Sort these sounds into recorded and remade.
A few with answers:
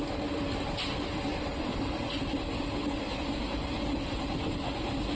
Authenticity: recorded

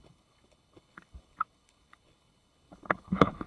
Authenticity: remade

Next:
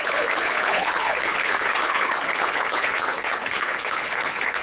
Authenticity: remade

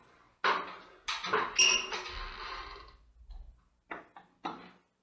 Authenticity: recorded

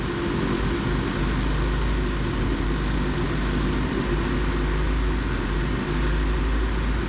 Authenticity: recorded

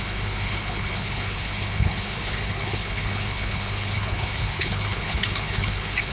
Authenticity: remade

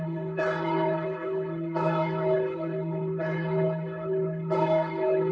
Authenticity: remade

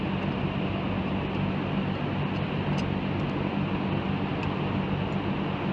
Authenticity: recorded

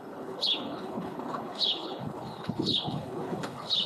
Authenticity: remade